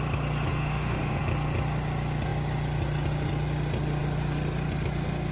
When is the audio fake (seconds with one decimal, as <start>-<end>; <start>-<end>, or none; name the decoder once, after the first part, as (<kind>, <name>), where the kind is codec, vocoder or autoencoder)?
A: 0.5-1.2 (autoencoder, DAC-VAE)